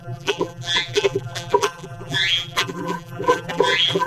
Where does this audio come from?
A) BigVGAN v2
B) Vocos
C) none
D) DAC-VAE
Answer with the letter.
A